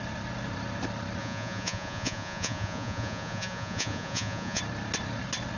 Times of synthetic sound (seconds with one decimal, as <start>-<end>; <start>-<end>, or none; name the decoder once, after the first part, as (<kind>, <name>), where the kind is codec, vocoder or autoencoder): 1.2-4.6 (vocoder, Vocos)